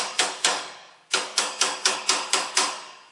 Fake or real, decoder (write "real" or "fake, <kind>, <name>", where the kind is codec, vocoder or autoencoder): fake, codec, DAC